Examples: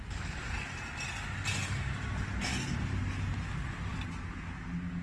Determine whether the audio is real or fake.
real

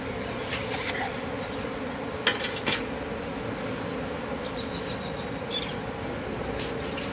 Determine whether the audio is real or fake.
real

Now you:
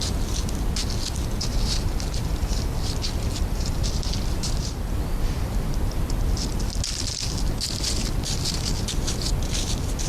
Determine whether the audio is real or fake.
real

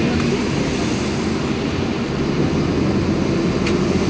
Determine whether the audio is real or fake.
real